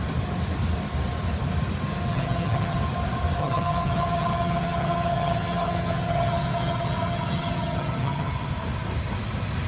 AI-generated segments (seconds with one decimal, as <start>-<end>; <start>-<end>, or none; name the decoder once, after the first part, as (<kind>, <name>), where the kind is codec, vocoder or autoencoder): 2.1-2.8 (vocoder, HiFi-GAN); 3.4-8.3